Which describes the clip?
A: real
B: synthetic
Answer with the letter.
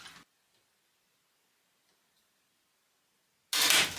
A